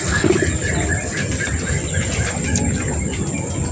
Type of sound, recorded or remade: recorded